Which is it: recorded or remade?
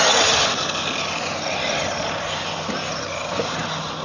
recorded